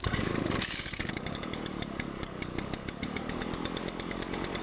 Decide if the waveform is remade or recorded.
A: remade